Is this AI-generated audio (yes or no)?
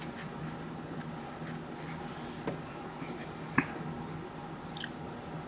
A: no